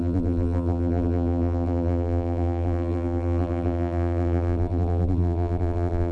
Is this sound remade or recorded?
remade